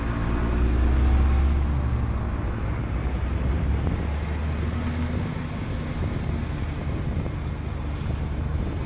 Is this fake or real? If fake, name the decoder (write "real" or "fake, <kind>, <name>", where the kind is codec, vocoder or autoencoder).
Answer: real